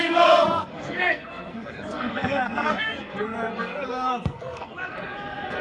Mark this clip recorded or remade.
remade